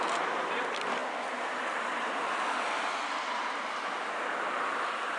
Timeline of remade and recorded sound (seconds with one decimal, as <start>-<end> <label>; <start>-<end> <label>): 0.0-5.2 recorded